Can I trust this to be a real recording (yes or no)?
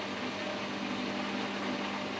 yes